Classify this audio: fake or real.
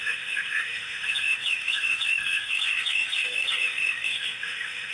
fake